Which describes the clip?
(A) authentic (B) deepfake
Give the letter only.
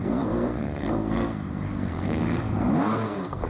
B